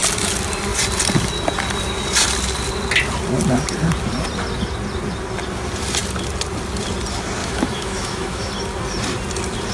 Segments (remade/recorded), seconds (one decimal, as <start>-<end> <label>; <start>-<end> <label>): 0.0-7.4 recorded; 7.4-8.5 remade; 8.5-9.7 recorded